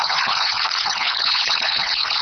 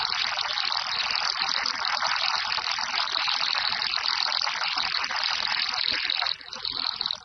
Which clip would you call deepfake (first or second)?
first